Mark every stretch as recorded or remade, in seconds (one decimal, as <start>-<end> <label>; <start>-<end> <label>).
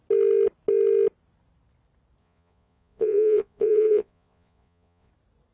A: 0.0-2.2 recorded; 2.2-5.1 remade; 5.1-5.5 recorded